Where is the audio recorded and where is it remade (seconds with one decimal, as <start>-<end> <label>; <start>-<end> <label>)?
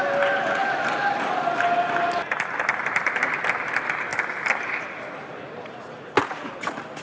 0.0-7.0 recorded